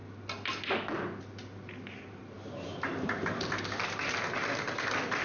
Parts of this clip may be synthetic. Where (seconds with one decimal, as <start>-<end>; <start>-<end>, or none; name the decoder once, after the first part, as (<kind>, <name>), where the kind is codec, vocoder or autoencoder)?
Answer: none